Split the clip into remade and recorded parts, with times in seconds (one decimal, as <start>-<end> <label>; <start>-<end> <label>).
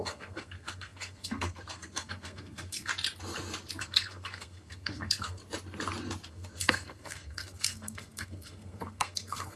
0.0-2.9 remade; 2.9-3.8 recorded; 3.8-5.4 remade; 5.4-6.3 recorded; 6.3-9.6 remade